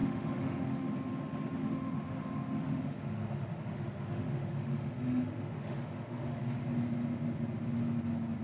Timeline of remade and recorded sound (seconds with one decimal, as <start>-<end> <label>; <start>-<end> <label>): 0.0-0.9 remade; 0.9-1.6 recorded; 1.6-6.6 remade; 6.6-8.4 recorded